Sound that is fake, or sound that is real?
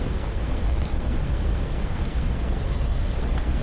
fake